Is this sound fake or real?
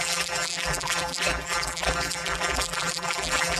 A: fake